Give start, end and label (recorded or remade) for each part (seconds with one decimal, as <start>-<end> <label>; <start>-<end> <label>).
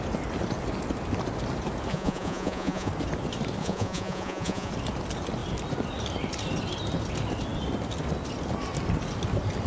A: 0.0-1.9 recorded; 1.9-2.9 remade; 2.9-3.6 recorded; 3.6-4.7 remade; 4.7-9.7 recorded